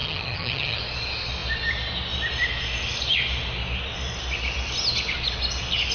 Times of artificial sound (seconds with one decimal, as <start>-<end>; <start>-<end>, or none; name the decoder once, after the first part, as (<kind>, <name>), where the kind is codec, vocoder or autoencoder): 0.0-0.8 (vocoder, HiFi-GAN)